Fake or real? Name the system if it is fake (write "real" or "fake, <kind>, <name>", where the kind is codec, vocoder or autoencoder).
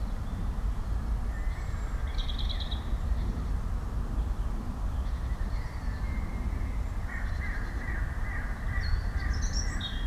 fake, vocoder, BigVGAN v2